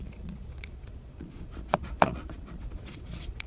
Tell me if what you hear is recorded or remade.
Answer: remade